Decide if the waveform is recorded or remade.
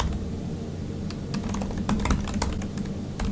recorded